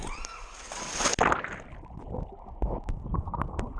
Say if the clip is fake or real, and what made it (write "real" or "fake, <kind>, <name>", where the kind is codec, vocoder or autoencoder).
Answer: real